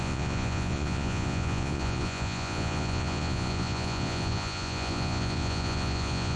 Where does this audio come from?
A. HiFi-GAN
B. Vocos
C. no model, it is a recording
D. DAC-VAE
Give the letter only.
B